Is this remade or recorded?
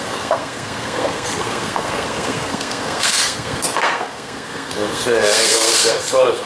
remade